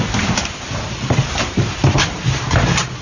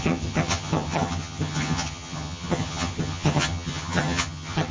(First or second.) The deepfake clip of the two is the second